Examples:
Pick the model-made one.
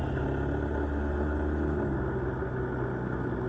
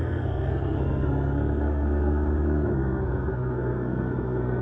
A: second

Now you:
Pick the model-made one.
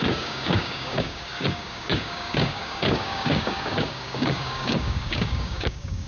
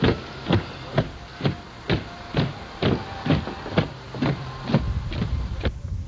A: first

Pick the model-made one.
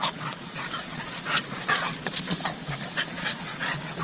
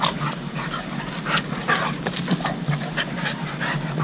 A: first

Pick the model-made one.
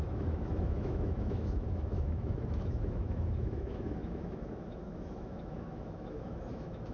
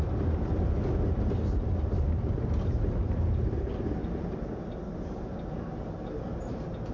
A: first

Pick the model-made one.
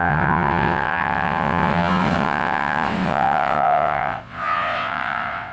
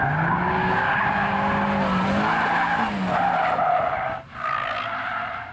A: first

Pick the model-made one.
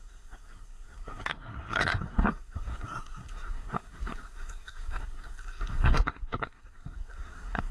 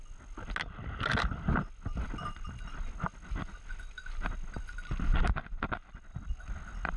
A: first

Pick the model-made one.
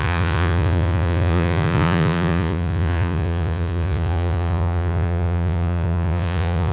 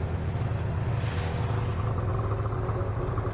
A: first